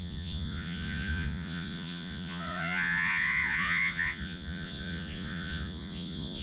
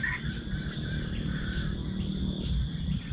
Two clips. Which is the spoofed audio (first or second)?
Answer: first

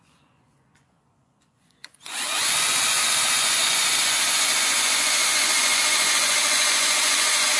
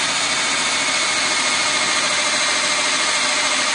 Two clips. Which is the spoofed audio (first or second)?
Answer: first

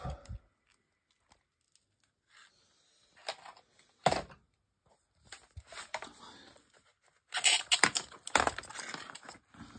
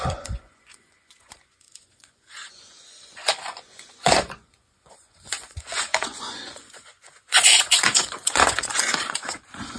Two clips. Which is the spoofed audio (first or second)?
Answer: second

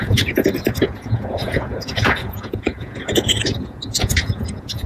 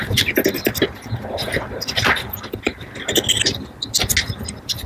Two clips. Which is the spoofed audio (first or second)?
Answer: first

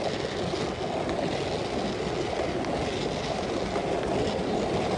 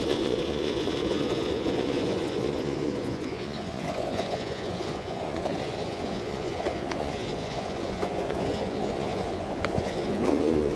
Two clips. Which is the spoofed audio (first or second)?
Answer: second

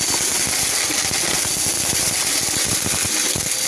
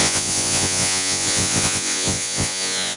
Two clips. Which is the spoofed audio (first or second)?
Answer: second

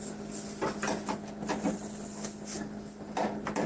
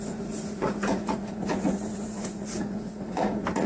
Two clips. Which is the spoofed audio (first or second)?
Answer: second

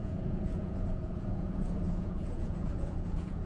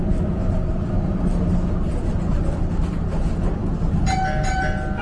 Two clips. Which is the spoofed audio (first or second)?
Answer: first